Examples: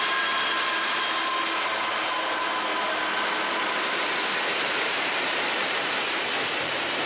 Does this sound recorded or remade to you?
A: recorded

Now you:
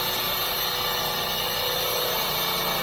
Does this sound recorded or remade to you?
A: recorded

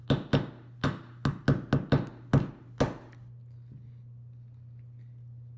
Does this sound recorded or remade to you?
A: recorded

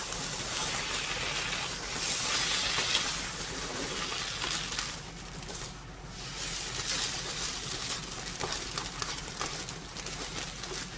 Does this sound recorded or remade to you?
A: recorded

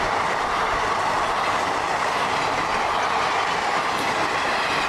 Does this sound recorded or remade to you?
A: recorded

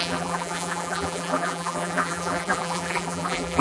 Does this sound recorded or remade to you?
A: remade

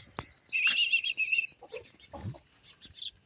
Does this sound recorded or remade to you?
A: recorded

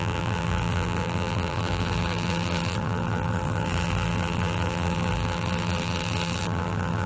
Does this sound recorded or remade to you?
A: remade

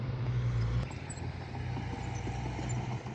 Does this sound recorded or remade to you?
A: recorded